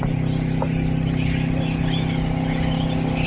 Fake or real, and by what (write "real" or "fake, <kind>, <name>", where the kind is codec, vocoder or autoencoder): real